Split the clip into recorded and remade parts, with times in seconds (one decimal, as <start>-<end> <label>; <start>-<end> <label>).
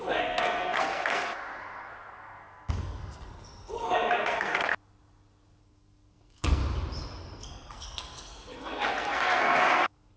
0.0-4.7 remade; 4.7-5.6 recorded; 5.6-6.6 remade; 6.6-7.2 recorded; 7.2-10.2 remade